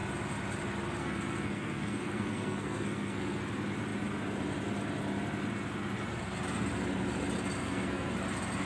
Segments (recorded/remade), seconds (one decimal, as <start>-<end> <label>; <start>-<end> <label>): 0.0-1.0 recorded; 1.0-3.4 remade; 3.4-7.6 recorded; 7.6-8.1 remade; 8.1-8.7 recorded